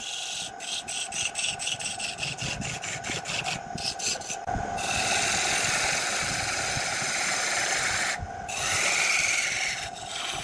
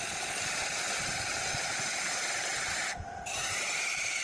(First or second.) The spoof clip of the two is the second